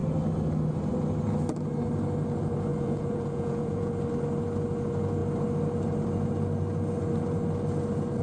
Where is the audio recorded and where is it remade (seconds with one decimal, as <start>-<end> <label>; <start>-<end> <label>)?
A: 0.0-2.7 recorded; 2.7-3.9 remade; 3.9-8.2 recorded